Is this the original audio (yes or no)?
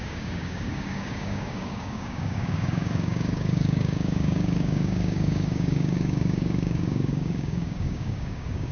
no